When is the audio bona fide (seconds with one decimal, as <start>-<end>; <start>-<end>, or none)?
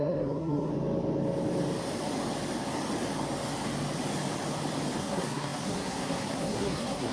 0.7-5.0